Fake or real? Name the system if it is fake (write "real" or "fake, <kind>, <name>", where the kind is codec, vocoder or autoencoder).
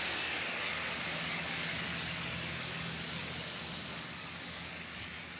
fake, codec, DAC